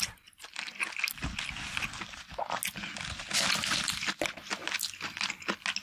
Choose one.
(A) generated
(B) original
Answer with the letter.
B